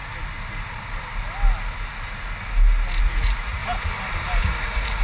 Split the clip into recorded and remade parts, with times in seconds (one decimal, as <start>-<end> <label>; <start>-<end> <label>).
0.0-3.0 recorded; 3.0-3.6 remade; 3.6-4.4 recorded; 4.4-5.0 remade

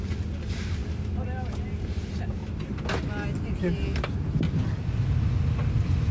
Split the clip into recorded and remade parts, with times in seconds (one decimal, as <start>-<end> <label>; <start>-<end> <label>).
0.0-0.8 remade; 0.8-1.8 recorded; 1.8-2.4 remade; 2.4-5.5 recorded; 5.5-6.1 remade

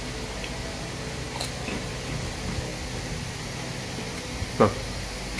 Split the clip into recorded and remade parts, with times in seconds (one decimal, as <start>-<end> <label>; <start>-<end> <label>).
0.0-5.4 recorded

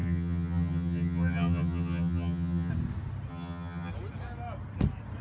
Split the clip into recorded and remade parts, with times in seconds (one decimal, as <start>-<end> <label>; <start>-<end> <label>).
0.0-2.7 remade; 2.7-3.3 recorded; 3.3-3.9 remade; 3.9-5.2 recorded

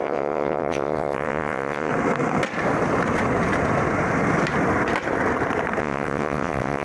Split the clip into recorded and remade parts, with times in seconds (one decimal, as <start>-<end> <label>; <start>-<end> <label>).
0.0-1.9 remade; 1.9-5.8 recorded; 5.8-6.8 remade

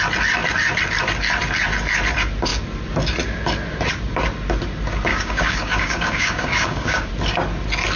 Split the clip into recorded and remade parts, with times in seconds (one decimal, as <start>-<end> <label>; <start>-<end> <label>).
0.0-5.1 recorded; 5.1-7.1 remade; 7.1-8.0 recorded

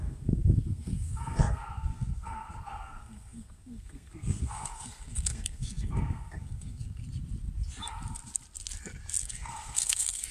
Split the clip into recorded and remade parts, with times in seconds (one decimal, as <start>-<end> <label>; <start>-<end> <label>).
0.0-7.0 remade; 7.0-9.2 recorded; 9.2-10.3 remade